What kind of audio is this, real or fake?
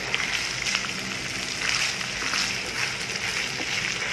real